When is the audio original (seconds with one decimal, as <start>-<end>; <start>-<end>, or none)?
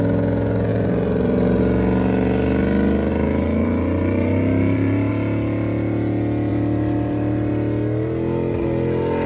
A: 0.0-0.7; 1.6-3.1; 5.1-6.5; 7.5-9.3